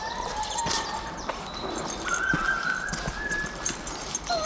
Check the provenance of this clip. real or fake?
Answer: fake